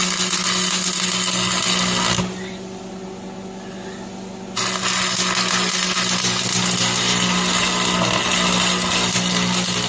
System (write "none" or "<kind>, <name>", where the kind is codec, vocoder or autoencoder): none